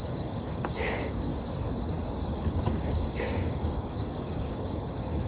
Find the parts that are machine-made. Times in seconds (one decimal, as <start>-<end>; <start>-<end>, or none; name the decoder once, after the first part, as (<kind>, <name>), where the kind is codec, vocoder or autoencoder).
0.0-1.3 (codec, DAC); 2.5-5.3